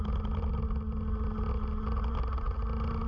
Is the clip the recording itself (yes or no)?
yes